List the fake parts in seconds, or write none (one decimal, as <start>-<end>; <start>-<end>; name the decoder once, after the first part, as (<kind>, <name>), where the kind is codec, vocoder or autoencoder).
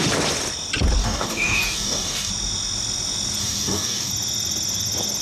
1.0-2.3 (codec, DAC); 3.4-4.1